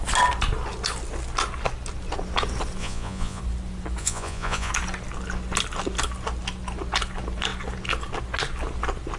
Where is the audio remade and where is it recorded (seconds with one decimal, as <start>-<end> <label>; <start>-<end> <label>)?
0.0-2.8 recorded; 2.8-3.4 remade; 3.4-4.0 recorded; 4.0-4.7 remade; 4.7-9.2 recorded